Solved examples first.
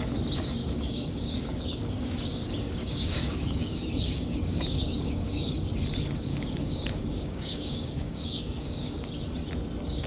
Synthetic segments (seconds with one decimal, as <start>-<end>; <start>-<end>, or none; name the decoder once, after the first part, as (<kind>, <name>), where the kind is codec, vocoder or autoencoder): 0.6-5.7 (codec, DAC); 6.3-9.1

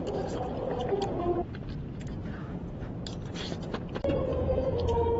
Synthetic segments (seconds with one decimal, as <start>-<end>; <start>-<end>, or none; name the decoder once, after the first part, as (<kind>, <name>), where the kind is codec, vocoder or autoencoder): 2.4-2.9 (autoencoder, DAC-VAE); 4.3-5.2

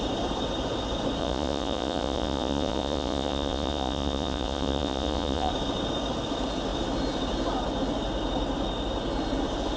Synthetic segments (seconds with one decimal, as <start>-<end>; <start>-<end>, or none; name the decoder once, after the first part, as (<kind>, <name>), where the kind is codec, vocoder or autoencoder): 1.2-5.5 (vocoder, Vocos)

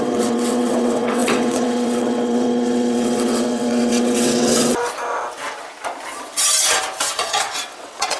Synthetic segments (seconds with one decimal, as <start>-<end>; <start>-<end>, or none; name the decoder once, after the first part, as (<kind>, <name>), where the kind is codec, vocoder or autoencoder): 0.0-4.8 (vocoder, WaveNeXt); 7.2-8.2